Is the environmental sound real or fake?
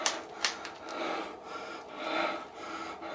real